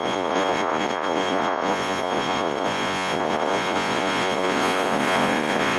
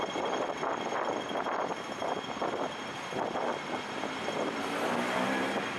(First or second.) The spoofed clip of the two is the first